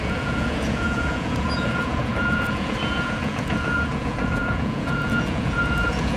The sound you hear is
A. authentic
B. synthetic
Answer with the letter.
B